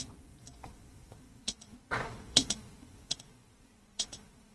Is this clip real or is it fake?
fake